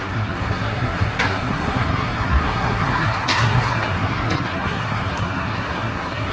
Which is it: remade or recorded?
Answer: remade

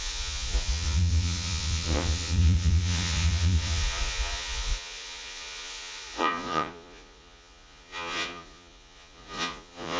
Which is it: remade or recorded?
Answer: remade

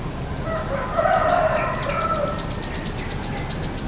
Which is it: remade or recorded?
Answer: recorded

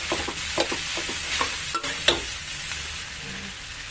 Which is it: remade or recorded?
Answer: recorded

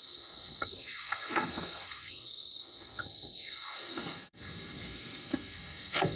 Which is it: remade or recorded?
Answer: remade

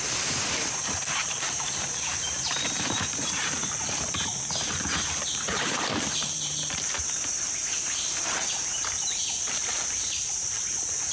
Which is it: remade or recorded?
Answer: remade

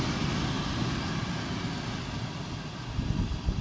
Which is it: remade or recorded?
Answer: recorded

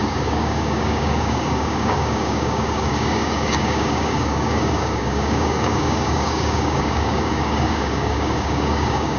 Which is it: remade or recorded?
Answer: remade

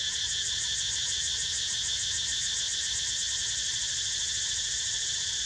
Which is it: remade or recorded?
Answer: remade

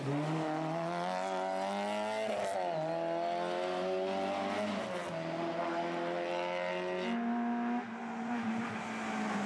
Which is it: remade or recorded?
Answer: recorded